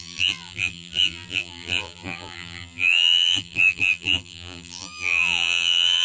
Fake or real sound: fake